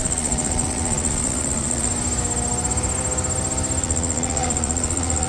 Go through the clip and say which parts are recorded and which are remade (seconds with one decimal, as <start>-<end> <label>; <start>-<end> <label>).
0.0-1.9 remade; 1.9-3.8 recorded; 3.8-5.3 remade